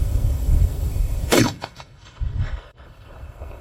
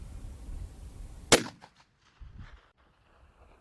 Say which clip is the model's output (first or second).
first